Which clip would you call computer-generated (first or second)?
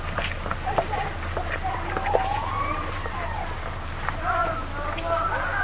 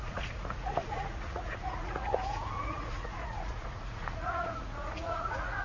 second